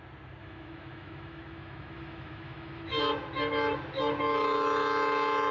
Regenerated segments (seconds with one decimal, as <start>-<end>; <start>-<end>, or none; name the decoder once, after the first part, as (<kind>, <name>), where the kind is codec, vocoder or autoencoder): 0.4-3.0 (autoencoder, DAC-VAE)